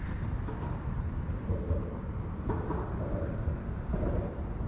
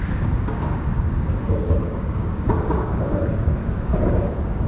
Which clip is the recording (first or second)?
first